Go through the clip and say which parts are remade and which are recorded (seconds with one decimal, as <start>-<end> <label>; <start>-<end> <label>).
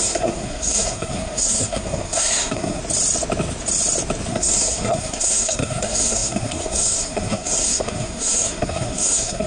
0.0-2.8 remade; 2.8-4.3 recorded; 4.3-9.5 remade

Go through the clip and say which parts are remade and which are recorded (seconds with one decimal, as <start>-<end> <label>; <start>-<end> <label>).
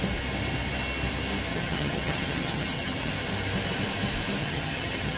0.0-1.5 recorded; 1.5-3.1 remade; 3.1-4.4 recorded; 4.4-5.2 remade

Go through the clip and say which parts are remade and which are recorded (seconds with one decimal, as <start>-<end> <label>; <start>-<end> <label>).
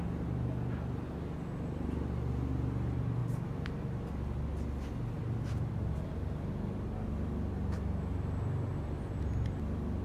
0.0-10.0 recorded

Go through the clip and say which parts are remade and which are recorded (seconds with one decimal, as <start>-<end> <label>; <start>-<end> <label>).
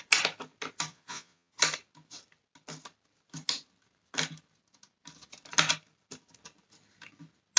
0.0-0.9 recorded; 0.9-1.5 remade; 1.5-7.6 recorded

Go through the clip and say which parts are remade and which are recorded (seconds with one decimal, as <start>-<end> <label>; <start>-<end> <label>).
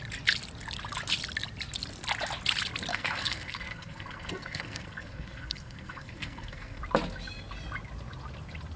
0.0-2.9 recorded; 2.9-6.8 remade; 6.8-8.8 recorded